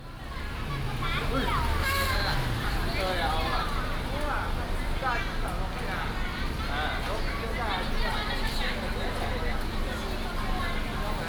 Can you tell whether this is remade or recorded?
recorded